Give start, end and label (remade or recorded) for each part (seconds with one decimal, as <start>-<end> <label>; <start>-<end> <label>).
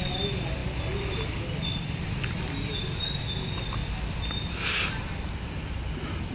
0.0-6.3 recorded